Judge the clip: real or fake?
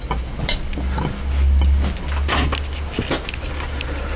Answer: real